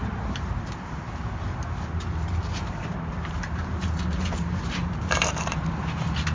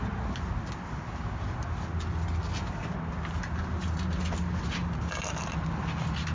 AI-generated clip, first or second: first